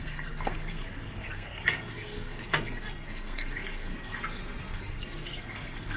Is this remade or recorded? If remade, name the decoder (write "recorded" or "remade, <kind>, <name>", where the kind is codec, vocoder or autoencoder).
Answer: remade, codec, SNAC